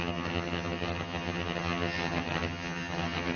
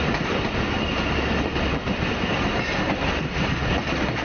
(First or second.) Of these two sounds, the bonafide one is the second